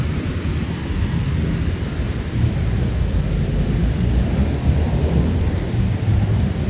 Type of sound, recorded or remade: recorded